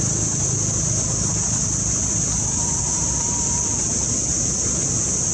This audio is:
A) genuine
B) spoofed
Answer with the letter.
A